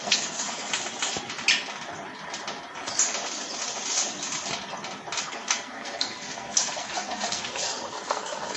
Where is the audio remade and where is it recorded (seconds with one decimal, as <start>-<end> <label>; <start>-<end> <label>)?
0.0-0.7 remade; 0.7-5.2 recorded; 5.2-8.6 remade